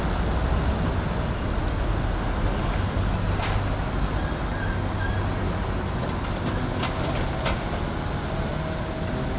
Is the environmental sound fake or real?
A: real